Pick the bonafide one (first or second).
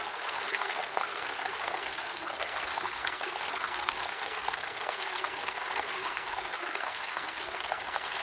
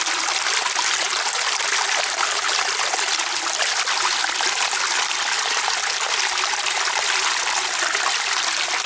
second